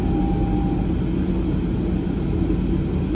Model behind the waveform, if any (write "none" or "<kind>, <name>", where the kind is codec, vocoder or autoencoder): none